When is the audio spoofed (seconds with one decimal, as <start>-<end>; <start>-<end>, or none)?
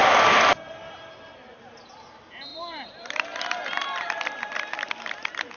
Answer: 2.5-4.6